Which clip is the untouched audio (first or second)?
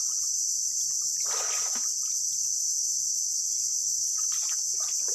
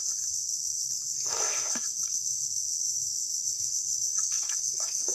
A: first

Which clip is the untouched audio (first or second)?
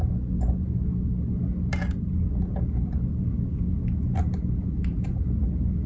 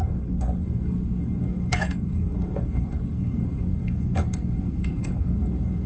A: first